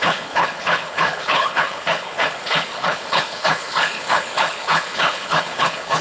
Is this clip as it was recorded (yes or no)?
no